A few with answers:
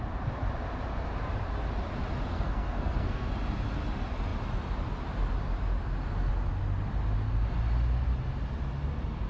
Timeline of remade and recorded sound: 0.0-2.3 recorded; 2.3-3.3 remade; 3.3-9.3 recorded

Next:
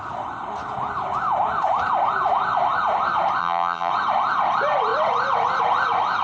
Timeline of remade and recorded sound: 0.0-3.4 recorded; 3.4-3.9 remade; 3.9-6.2 recorded

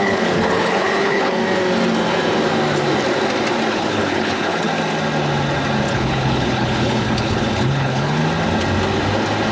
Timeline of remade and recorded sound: 0.0-1.4 remade; 1.4-3.7 recorded; 3.7-4.7 remade; 4.7-5.9 recorded; 5.9-8.2 remade; 8.2-9.5 recorded

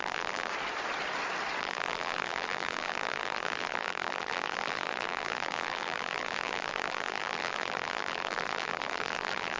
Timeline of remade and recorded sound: 0.0-0.5 remade; 0.5-1.6 recorded; 1.6-9.6 remade

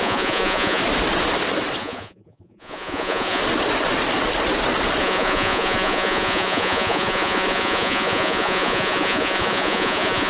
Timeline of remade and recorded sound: 0.0-0.8 remade; 0.8-1.8 recorded; 1.8-3.4 remade; 3.4-5.0 recorded; 5.0-10.3 remade

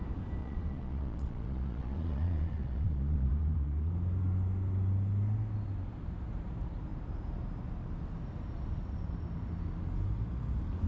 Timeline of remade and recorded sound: 0.0-0.4 recorded; 0.4-3.9 remade; 3.9-10.9 recorded

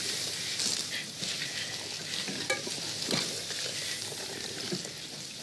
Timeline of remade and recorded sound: 0.0-5.4 recorded

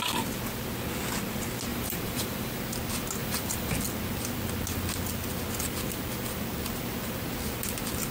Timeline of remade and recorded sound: 0.0-1.7 recorded; 1.7-2.6 remade; 2.6-3.2 recorded; 3.2-3.7 remade; 3.7-8.1 recorded